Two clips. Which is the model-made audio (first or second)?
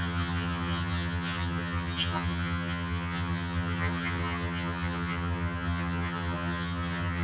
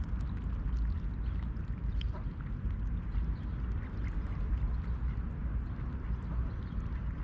first